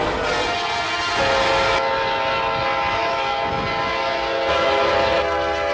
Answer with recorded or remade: recorded